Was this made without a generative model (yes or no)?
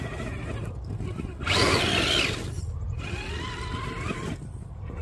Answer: yes